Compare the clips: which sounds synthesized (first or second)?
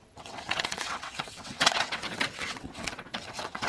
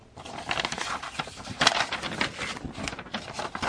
first